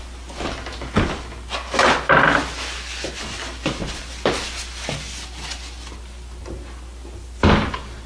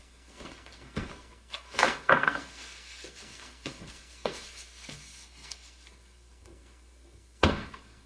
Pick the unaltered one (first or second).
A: first